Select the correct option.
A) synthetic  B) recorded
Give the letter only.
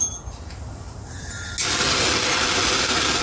B